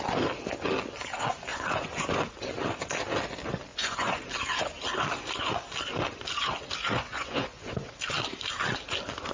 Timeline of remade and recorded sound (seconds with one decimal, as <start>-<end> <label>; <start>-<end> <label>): 0.0-1.5 recorded; 1.5-2.3 remade; 2.3-3.7 recorded; 3.7-4.2 remade; 4.2-6.9 recorded; 6.9-7.9 remade; 7.9-9.3 recorded